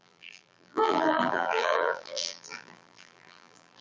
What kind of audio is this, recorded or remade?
remade